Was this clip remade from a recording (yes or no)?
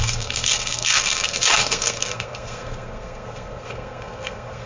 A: yes